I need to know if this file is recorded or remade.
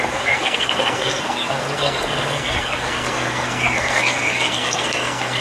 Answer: remade